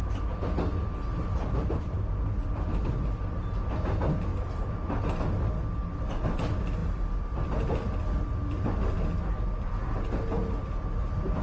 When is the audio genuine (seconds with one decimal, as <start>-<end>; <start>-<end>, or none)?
0.0-11.4